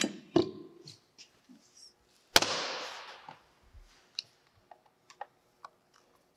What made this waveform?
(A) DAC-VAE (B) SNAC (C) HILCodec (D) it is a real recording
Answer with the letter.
D